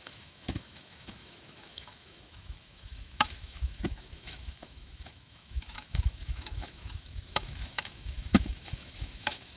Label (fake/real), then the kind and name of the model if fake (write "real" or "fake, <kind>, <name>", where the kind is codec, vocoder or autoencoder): fake, autoencoder, DAC-VAE